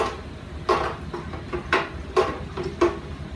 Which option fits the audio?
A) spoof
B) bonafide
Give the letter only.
B